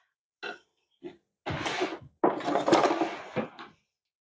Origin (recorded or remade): recorded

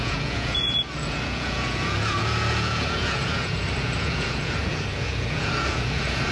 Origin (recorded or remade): remade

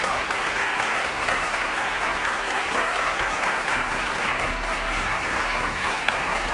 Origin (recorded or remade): remade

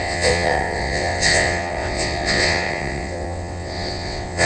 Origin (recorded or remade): remade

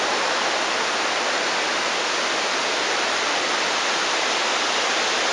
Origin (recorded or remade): recorded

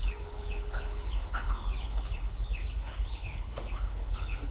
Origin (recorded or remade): remade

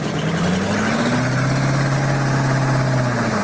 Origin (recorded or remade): recorded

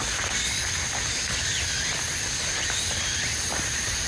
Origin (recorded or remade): recorded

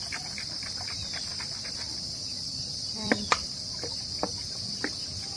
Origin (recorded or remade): remade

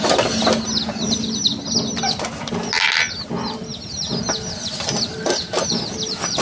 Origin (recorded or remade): recorded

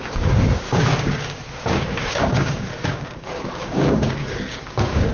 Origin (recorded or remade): remade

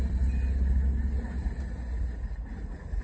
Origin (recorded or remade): recorded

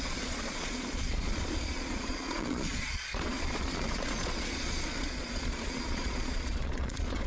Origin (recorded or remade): remade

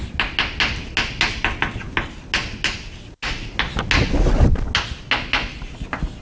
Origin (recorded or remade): recorded